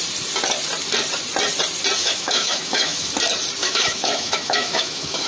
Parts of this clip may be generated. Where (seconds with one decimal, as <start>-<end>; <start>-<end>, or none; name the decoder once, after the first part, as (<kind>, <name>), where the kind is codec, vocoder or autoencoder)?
2.0-3.1 (autoencoder, DAC-VAE); 3.6-5.3